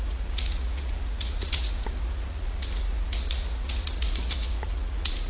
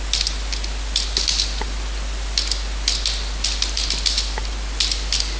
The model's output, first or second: first